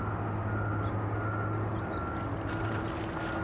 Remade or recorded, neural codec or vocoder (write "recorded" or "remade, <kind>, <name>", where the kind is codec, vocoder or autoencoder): recorded